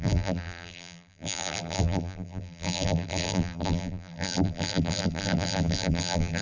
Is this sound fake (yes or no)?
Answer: yes